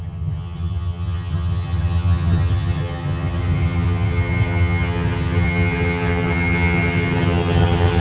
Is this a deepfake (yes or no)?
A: yes